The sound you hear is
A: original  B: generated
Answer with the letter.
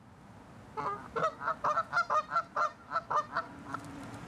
A